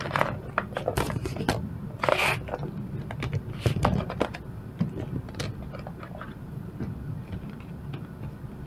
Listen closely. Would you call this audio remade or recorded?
recorded